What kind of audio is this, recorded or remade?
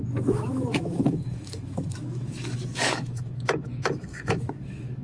remade